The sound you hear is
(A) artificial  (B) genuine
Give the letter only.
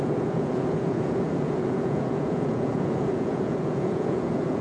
A